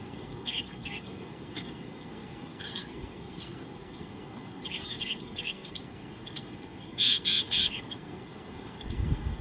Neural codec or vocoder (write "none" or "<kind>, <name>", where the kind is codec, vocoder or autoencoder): codec, SNAC